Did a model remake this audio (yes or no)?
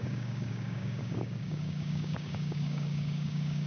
yes